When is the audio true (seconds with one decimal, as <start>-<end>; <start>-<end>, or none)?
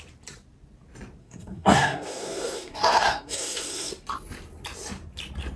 0.0-1.2; 3.9-5.6